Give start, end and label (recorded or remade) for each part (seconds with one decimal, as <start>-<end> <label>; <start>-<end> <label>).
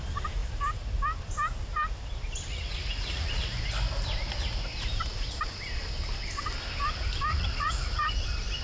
0.0-2.5 recorded; 2.5-3.5 remade; 3.5-7.3 recorded; 7.3-8.1 remade; 8.1-8.6 recorded